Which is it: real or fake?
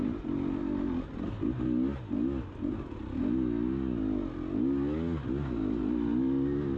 real